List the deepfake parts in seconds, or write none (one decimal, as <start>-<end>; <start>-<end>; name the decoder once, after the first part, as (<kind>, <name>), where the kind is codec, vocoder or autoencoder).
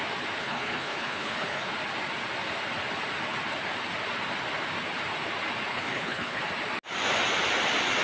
0.4-1.7 (codec, HILCodec); 5.7-6.4